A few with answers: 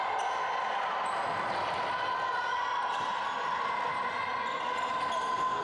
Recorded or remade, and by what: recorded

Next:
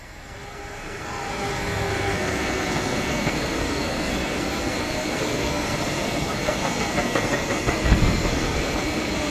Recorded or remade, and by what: remade, codec, SNAC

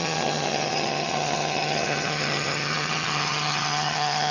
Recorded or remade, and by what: remade, vocoder, HiFi-GAN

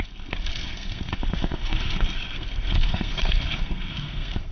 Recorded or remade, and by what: remade, codec, SNAC